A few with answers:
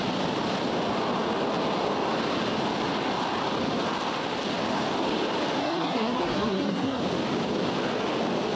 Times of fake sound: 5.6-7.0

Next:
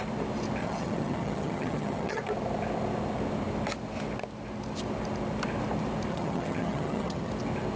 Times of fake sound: 0.6-2.2; 6.1-7.3

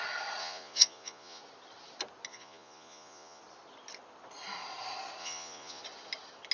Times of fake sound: 0.4-1.4; 2.3-3.4; 5.2-5.8

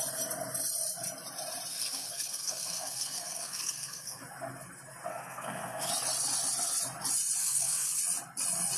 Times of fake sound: 1.7-4.2; 5.1-5.9; 7.4-8.0